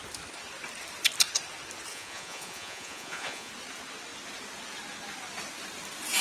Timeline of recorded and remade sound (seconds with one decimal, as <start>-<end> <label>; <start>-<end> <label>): 0.0-1.9 recorded; 1.9-3.5 remade; 3.5-6.2 recorded